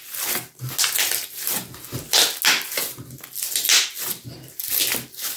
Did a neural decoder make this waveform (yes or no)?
no